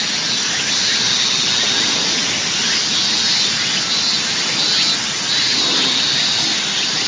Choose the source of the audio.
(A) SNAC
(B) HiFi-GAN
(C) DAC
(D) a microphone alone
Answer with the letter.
D